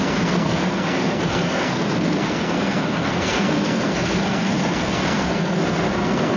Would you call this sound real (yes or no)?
no